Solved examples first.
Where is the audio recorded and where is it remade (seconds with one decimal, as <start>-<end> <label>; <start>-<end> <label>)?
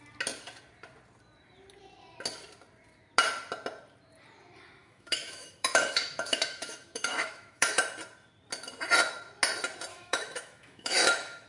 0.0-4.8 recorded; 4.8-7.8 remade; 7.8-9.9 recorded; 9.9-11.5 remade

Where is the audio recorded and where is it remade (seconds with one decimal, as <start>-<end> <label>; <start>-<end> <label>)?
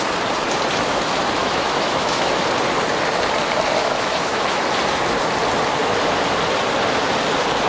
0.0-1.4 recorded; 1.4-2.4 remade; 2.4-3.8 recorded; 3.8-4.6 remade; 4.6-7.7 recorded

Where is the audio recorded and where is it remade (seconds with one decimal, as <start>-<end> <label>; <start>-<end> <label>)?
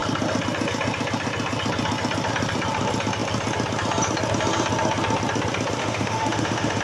0.0-5.8 recorded; 5.8-6.8 remade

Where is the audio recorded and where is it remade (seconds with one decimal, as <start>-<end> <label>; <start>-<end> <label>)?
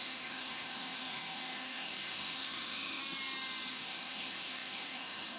0.0-3.0 remade; 3.0-3.7 recorded; 3.7-5.4 remade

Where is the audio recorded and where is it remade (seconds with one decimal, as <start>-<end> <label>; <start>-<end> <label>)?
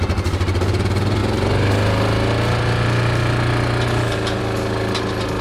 0.0-5.4 recorded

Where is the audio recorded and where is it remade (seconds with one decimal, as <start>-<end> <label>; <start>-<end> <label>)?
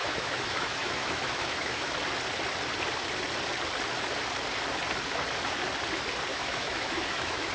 0.0-1.9 remade; 1.9-6.3 recorded; 6.3-7.5 remade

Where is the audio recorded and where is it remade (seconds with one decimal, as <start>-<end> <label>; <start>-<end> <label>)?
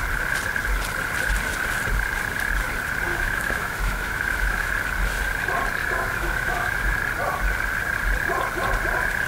0.0-3.1 recorded; 3.1-4.7 remade; 4.7-5.8 recorded; 5.8-7.0 remade; 7.0-9.3 recorded